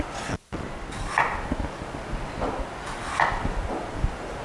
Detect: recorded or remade recorded